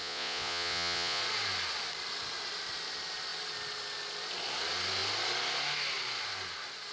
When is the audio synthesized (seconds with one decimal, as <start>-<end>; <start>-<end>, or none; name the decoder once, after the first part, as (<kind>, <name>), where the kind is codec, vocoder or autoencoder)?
0.0-1.2 (vocoder, Vocos)